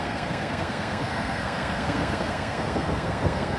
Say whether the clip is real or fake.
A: fake